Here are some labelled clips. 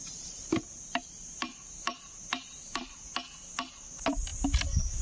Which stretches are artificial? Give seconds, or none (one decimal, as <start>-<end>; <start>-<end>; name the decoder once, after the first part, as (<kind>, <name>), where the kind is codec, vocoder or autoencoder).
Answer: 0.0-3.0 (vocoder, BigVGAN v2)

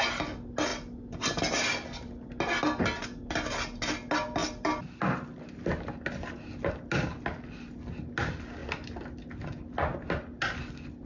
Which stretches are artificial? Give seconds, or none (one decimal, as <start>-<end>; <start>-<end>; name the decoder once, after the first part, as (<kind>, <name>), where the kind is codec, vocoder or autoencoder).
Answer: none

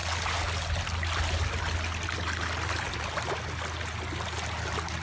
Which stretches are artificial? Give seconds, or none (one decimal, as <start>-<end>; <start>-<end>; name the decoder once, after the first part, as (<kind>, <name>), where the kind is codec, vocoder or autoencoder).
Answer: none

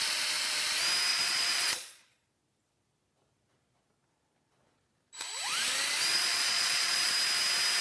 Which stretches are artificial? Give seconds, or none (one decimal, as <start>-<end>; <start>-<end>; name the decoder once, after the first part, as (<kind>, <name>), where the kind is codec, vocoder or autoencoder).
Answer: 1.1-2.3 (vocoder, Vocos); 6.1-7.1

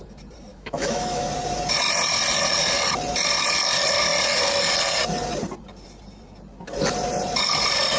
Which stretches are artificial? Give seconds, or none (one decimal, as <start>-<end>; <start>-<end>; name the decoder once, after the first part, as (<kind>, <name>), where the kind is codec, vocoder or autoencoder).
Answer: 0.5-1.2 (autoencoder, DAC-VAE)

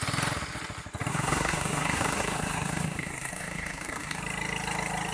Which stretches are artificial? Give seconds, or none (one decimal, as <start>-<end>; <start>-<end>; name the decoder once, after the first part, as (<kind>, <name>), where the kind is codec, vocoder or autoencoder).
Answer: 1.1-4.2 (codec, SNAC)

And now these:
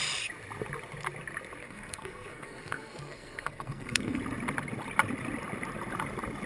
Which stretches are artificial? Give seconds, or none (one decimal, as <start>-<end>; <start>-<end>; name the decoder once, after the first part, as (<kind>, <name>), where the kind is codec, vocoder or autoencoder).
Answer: 1.6-4.2 (codec, SNAC)